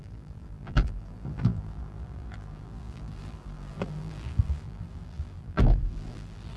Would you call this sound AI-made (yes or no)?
yes